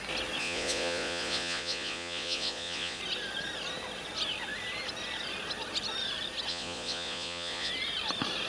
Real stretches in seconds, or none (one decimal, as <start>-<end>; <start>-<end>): 0.0-0.4; 3.0-6.5; 7.7-8.5